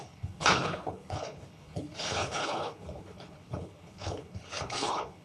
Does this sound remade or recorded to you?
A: remade